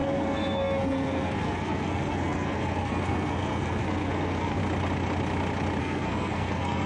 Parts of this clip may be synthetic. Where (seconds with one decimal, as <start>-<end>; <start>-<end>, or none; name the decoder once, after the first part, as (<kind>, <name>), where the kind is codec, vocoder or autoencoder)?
0.0-4.6 (codec, SNAC); 5.8-6.9